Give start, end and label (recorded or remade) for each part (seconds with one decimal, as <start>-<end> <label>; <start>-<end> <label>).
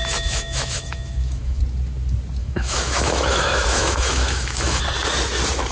0.0-1.6 remade; 1.6-2.4 recorded; 2.4-4.8 remade; 4.8-5.7 recorded